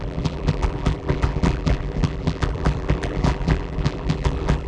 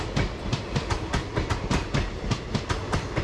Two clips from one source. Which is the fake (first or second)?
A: first